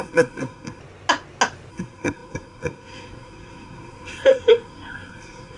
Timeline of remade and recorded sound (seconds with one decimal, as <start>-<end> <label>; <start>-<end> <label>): 0.0-0.8 remade; 0.8-1.7 recorded; 1.7-5.6 remade